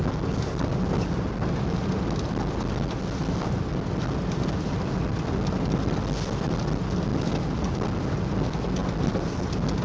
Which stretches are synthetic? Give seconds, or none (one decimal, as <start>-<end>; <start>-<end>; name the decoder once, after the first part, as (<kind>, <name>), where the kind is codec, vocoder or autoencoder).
none